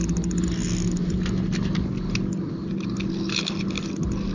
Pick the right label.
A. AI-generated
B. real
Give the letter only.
B